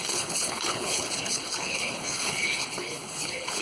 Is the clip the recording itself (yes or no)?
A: no